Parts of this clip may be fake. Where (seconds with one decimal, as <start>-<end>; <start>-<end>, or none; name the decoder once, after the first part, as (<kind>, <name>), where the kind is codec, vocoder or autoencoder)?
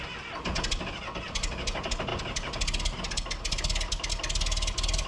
none